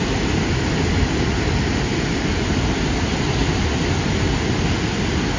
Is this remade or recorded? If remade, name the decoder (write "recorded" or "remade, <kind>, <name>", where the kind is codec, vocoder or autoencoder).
recorded